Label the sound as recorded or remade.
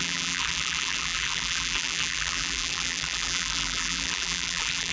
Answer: remade